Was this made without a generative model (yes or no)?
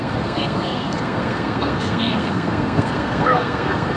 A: no